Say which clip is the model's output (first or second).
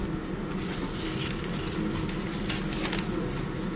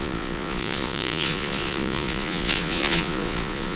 second